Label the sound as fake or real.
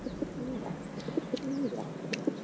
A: real